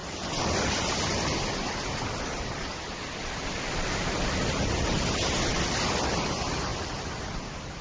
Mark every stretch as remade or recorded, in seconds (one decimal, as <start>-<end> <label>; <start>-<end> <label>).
0.0-4.3 remade; 4.3-7.8 recorded